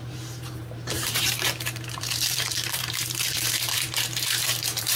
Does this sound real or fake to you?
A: fake